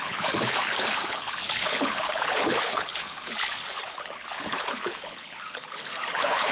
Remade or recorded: remade